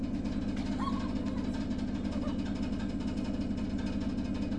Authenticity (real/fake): real